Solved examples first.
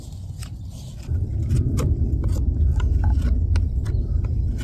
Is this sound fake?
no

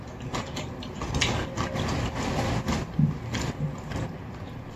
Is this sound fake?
no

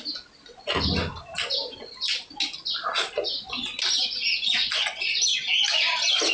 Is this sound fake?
no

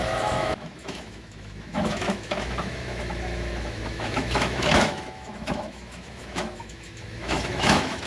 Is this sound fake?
yes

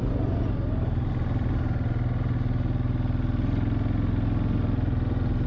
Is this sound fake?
no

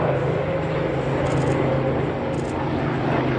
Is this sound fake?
no